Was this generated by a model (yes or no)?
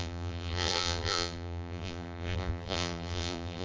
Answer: yes